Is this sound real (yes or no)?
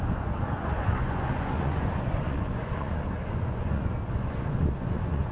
no